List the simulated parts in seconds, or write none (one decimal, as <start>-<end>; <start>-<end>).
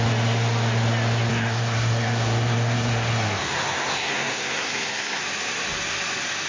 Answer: 1.3-5.2